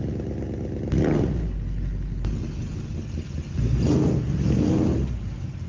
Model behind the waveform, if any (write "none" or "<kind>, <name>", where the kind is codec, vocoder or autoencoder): none